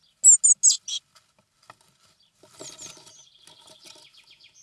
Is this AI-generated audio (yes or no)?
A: no